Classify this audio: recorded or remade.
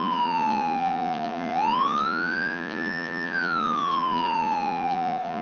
remade